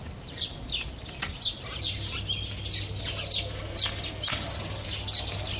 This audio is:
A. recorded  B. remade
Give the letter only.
A